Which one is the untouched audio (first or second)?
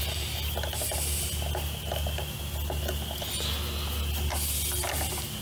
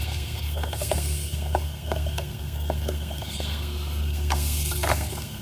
first